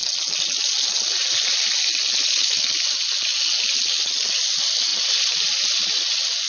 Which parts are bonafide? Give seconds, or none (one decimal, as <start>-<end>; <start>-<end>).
0.0-6.5